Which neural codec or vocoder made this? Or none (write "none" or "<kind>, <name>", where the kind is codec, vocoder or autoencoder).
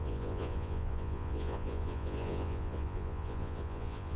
vocoder, Vocos